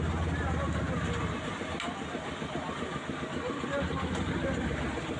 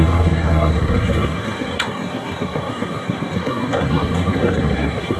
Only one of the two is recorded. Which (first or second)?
first